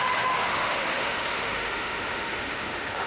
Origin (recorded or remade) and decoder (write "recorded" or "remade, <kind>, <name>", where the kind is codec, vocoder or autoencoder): remade, autoencoder, DAC-VAE